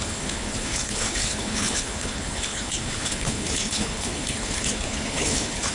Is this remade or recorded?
remade